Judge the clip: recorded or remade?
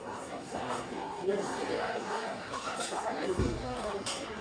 remade